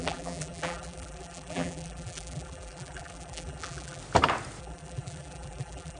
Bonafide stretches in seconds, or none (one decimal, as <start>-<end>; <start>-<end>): 4.0-4.6